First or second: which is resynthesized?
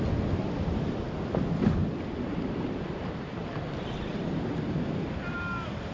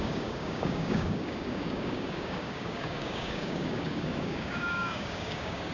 second